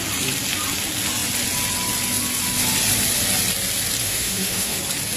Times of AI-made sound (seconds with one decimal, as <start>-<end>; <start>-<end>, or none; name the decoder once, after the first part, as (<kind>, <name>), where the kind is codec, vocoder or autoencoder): 4.0-4.8 (autoencoder, DAC-VAE)